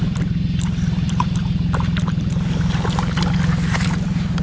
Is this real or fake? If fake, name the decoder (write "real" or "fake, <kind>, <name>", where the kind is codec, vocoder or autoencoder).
real